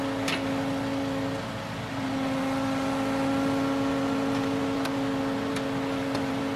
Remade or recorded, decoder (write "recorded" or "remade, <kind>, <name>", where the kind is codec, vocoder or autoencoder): recorded